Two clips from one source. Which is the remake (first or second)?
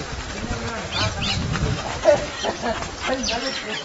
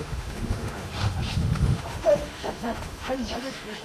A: second